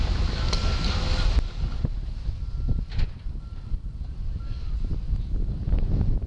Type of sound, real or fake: real